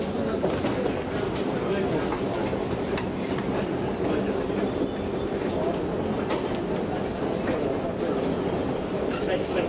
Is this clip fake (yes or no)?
no